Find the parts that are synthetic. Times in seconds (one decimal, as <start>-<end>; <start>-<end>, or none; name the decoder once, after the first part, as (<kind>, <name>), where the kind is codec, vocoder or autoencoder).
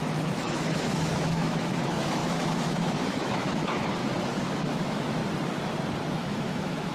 0.0-4.0 (autoencoder, DAC-VAE); 4.5-5.2; 6.1-6.9